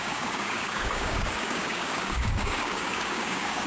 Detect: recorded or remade remade